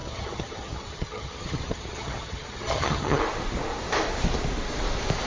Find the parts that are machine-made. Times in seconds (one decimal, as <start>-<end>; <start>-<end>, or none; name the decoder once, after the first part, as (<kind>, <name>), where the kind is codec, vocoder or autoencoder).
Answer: 0.0-3.2 (vocoder, HiFi-GAN)